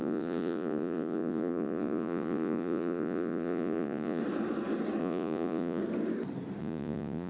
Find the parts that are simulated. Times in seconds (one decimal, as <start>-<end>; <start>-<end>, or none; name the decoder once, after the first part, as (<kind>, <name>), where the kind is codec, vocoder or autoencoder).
0.0-4.2 (vocoder, Vocos); 5.0-5.8; 6.6-7.3